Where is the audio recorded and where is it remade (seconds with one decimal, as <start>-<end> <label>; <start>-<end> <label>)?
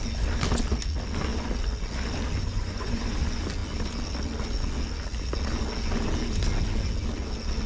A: 0.0-2.5 recorded; 2.5-3.2 remade; 3.2-7.7 recorded